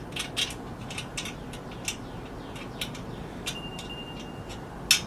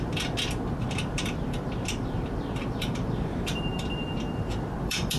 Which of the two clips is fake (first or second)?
second